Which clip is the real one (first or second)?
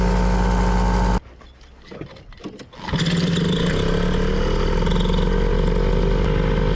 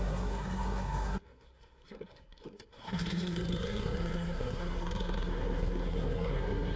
first